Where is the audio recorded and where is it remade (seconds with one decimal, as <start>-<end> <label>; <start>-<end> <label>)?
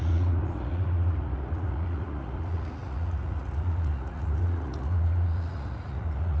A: 0.0-6.4 remade